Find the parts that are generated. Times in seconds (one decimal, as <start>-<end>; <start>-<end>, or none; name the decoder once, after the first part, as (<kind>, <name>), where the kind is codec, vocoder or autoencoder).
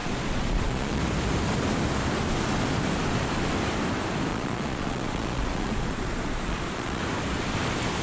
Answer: 0.0-1.0 (vocoder, Vocos); 4.3-7.0